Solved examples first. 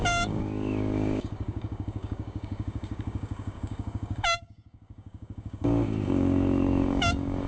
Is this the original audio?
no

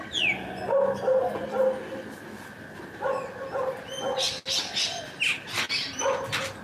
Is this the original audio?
yes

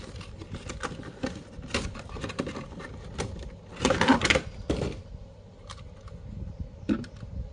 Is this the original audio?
yes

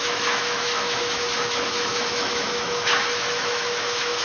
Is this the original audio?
no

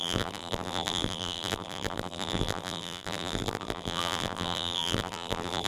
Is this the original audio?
no